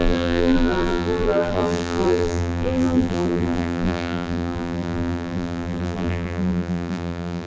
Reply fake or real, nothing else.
fake